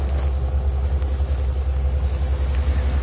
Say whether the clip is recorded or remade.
recorded